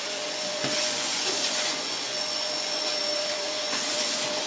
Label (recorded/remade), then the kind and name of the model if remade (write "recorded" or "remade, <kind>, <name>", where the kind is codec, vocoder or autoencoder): remade, vocoder, Vocos